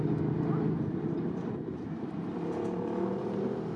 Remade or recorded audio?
recorded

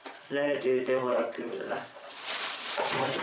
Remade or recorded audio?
remade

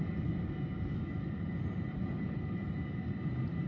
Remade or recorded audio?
recorded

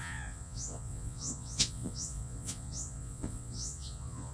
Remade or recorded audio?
remade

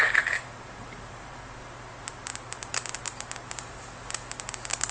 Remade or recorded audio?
recorded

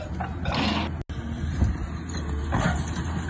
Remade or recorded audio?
recorded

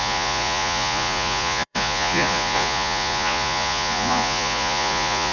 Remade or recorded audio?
remade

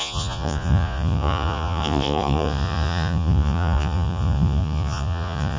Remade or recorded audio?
remade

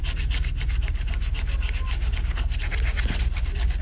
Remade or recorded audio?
recorded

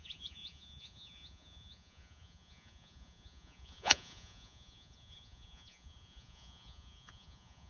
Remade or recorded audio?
remade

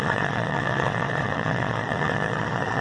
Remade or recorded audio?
remade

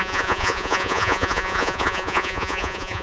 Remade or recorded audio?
remade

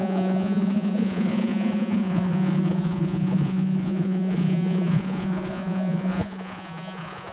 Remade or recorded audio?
remade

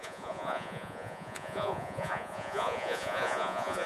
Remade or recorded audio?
remade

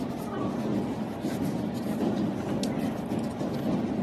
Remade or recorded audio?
recorded